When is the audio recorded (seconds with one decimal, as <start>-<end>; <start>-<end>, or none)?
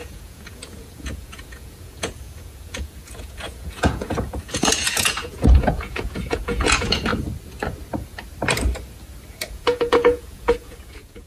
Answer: 7.1-9.5